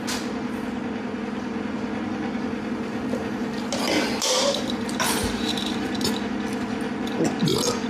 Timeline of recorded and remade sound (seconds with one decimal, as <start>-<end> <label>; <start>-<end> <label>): 0.0-5.2 recorded; 5.2-5.9 remade; 5.9-7.9 recorded